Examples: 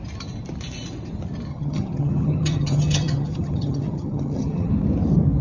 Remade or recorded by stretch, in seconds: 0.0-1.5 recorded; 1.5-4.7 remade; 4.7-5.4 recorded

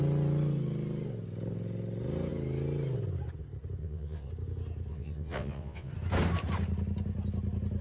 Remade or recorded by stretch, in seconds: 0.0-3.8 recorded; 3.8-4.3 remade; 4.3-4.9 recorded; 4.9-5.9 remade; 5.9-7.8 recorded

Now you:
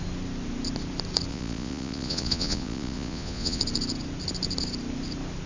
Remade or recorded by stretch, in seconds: 0.0-1.3 recorded; 1.3-3.6 remade; 3.6-5.5 recorded